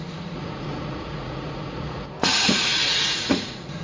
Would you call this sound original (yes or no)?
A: no